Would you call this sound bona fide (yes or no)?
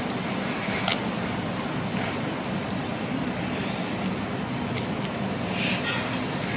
yes